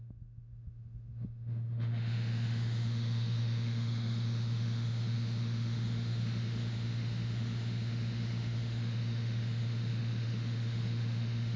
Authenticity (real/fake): fake